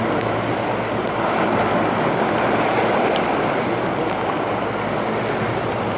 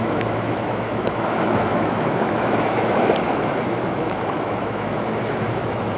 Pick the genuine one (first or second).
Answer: first